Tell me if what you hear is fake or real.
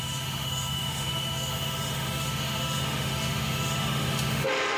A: fake